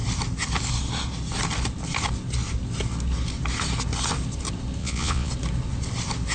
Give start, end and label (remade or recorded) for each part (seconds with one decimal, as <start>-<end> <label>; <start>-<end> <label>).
0.0-4.8 recorded; 4.8-5.3 remade; 5.3-6.3 recorded